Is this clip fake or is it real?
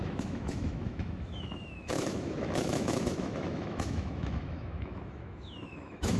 fake